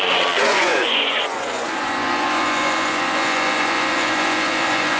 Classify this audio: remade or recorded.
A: remade